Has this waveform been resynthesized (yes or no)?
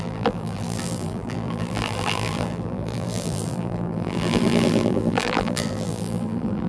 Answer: yes